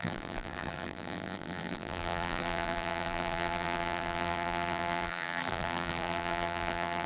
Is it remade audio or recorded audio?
remade